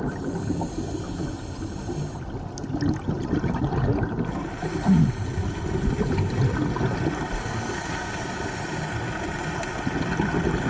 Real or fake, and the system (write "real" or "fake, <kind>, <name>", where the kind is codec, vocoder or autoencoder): real